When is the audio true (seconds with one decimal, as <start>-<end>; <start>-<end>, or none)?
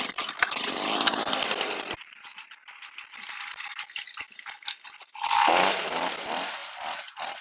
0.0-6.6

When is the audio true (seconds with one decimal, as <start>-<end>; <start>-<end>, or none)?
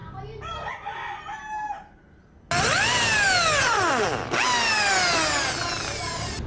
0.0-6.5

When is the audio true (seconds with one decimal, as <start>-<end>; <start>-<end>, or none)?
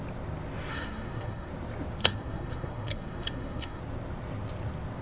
0.0-0.7; 1.5-2.0; 3.8-5.0